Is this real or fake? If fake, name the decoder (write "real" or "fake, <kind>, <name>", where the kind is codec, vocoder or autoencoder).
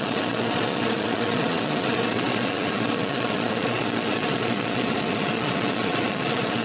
fake, vocoder, Vocos